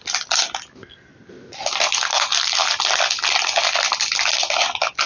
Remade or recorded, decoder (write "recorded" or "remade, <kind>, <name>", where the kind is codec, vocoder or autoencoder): recorded